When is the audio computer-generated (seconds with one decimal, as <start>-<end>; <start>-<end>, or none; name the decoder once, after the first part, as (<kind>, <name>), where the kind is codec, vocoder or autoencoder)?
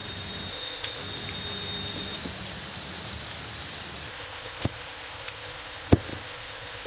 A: 0.5-1.0 (codec, ZipCodec); 4.1-6.9